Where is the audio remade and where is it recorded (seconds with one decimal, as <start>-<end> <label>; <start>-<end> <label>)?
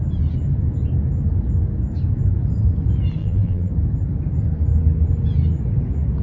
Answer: 0.0-3.2 recorded; 3.2-3.7 remade; 3.7-6.2 recorded